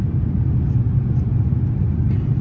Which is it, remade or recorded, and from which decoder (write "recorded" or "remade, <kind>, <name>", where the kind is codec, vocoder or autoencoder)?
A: recorded